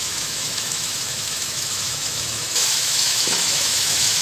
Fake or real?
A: fake